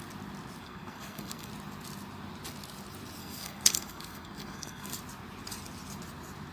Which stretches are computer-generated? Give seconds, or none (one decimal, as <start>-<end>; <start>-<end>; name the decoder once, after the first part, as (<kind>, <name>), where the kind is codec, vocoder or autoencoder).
0.6-1.5 (codec, SNAC); 3.2-5.0